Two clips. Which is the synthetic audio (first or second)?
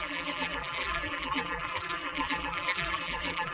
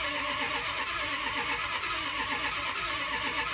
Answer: first